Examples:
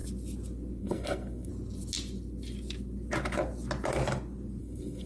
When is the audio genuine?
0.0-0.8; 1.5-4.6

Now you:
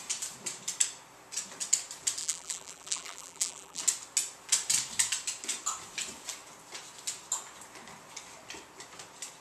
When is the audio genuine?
0.0-2.2; 3.8-9.4

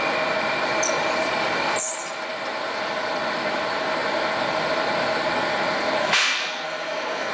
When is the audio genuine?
0.0-6.0

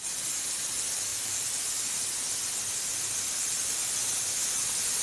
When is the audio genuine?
0.0-1.1; 2.1-5.0

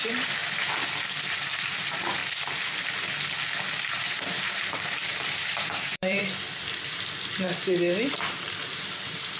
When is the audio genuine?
0.4-1.3; 2.2-3.7; 6.2-8.1

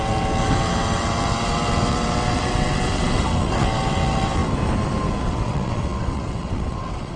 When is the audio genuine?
4.4-5.2

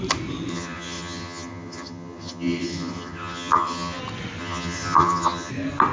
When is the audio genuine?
0.0-0.5; 4.0-4.4; 5.5-5.9